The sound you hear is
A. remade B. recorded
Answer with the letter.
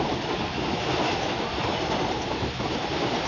B